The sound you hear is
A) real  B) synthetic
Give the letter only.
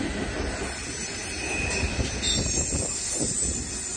A